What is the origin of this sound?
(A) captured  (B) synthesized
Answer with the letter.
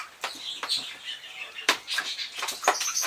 A